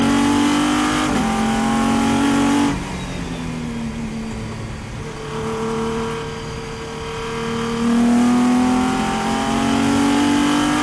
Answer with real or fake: real